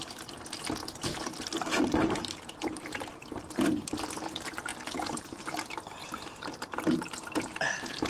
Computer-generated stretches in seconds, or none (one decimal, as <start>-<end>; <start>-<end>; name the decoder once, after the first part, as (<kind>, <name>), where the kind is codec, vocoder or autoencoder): 0.8-3.7 (vocoder, BigVGAN v2); 6.0-7.6